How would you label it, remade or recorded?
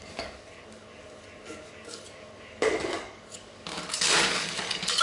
remade